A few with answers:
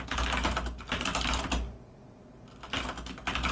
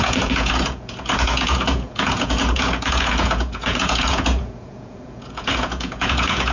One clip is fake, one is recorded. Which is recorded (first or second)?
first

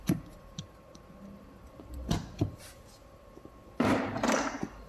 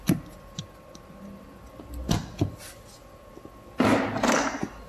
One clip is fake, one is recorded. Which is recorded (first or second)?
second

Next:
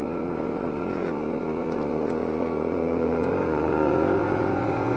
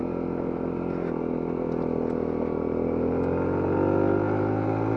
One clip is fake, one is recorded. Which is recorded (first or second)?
second